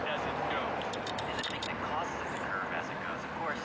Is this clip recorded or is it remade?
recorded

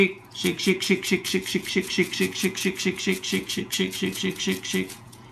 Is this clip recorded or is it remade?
remade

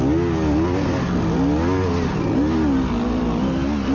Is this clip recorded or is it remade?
recorded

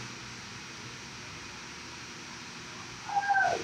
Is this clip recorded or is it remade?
recorded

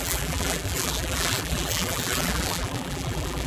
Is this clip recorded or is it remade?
remade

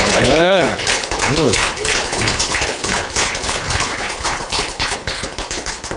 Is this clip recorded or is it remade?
remade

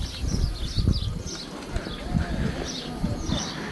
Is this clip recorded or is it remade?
recorded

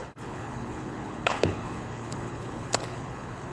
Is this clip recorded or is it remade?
remade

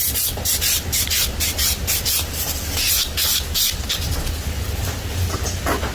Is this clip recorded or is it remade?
recorded